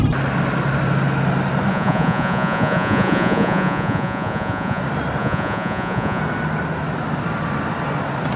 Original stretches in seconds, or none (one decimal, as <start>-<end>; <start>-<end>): 0.0-1.7; 4.8-5.2; 6.2-8.4